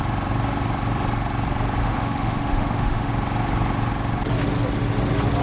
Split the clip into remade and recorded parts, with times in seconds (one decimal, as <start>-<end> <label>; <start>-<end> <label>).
0.0-1.8 recorded; 1.8-3.1 remade; 3.1-5.4 recorded